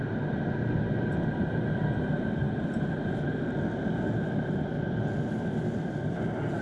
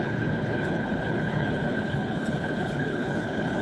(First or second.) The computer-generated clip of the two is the second